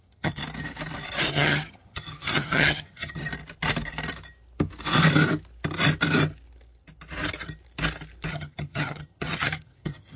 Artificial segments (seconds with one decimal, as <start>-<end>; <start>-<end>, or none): 0.0-0.4; 1.3-3.2; 8.3-10.2